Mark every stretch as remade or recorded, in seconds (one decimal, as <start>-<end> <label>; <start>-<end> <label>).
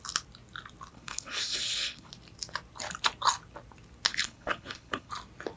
0.0-0.9 recorded; 0.9-2.1 remade; 2.1-4.1 recorded; 4.1-5.1 remade; 5.1-5.6 recorded